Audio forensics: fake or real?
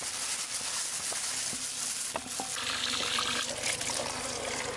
real